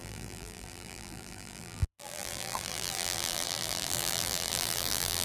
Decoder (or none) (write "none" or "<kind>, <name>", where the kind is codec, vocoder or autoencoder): vocoder, BigVGAN v2